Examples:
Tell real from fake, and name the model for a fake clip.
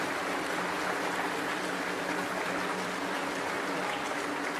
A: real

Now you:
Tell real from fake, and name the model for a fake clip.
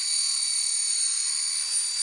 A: real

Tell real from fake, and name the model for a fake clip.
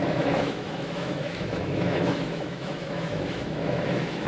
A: fake, autoencoder, DAC-VAE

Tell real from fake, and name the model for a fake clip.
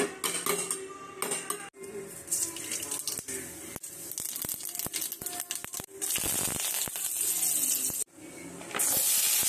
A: real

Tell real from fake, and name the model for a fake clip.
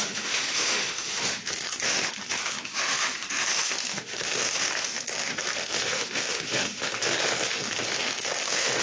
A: fake, autoencoder, DAC-VAE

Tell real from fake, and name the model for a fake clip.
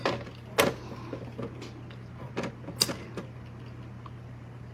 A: real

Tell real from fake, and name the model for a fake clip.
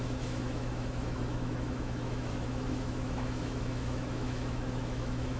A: fake, autoencoder, DAC-VAE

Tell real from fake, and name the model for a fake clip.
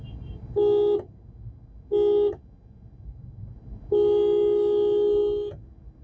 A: real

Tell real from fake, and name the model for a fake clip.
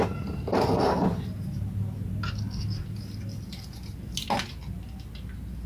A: real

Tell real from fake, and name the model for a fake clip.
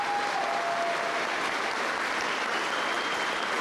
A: real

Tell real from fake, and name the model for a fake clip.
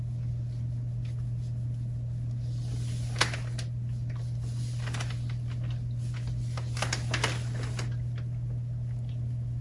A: real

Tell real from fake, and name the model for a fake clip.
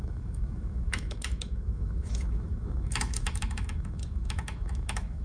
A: fake, autoencoder, DAC-VAE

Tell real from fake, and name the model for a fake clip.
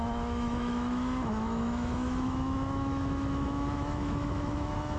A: fake, autoencoder, DAC-VAE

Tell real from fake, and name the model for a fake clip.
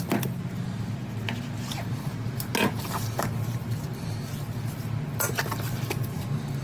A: real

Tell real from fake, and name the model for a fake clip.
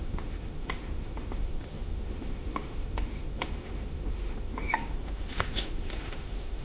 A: fake, autoencoder, DAC-VAE